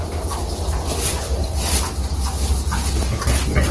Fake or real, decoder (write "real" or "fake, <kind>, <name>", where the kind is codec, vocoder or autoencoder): real